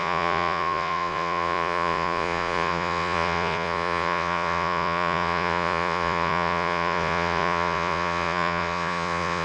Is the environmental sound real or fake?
fake